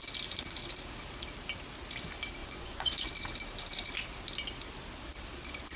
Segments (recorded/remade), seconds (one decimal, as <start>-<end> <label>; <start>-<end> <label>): 0.0-2.4 recorded; 2.4-3.1 remade; 3.1-5.8 recorded